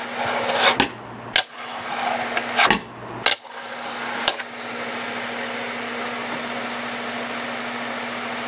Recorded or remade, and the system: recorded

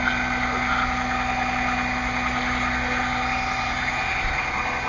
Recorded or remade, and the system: recorded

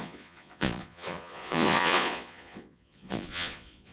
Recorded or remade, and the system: remade, vocoder, Vocos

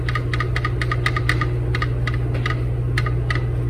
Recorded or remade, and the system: recorded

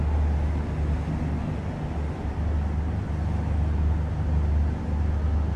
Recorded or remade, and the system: recorded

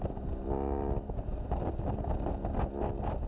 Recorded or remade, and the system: recorded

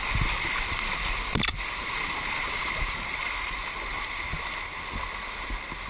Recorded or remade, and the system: recorded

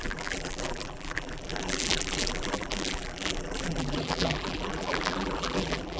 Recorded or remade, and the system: remade, vocoder, BigVGAN v2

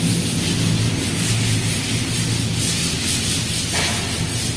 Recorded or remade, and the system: recorded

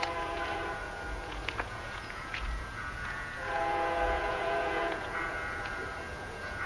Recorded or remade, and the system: remade, vocoder, Vocos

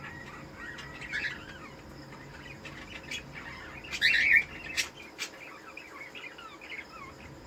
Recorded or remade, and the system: recorded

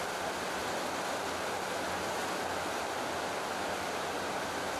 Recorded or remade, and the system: recorded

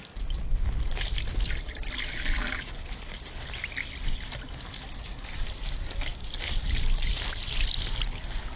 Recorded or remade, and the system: recorded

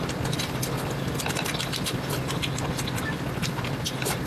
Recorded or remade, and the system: recorded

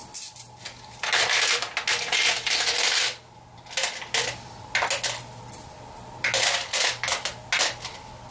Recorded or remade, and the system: recorded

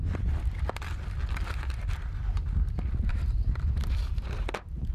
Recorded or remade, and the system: recorded